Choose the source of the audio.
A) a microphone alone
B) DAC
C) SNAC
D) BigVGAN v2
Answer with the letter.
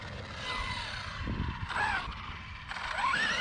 A